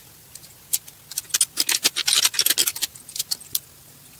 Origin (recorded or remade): recorded